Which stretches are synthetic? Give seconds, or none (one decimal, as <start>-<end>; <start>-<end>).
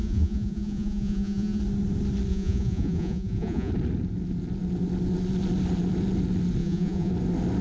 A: 0.0-1.6; 2.3-3.7; 6.6-7.1